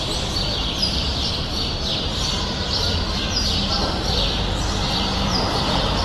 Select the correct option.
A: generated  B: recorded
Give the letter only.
A